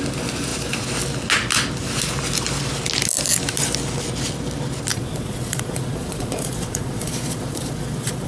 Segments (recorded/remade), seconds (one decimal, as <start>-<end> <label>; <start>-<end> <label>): 0.0-4.9 recorded; 4.9-8.3 remade